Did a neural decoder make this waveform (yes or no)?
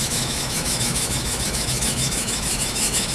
yes